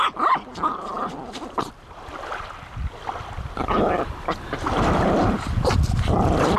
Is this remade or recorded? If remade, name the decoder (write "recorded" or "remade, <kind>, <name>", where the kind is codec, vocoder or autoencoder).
recorded